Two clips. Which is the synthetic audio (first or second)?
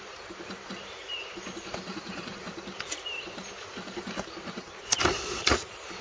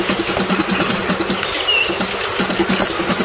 first